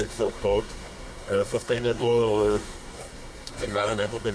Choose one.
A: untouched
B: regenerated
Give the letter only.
B